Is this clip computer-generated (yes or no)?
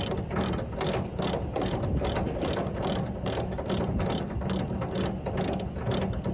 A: no